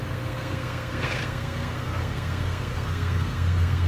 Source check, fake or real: fake